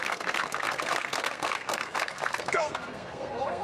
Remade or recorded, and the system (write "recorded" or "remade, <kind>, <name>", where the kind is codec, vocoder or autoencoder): remade, codec, SNAC